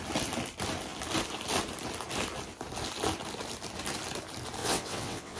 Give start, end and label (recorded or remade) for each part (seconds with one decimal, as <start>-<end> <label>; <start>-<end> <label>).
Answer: 0.0-4.6 recorded; 4.6-5.4 remade